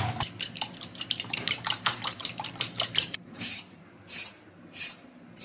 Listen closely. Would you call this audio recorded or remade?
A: remade